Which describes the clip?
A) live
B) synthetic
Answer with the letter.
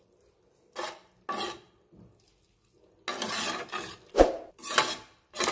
A